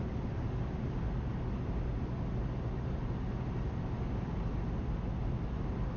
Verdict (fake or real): real